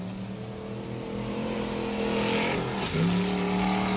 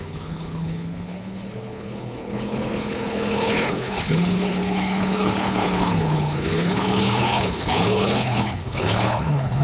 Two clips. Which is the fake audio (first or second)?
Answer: second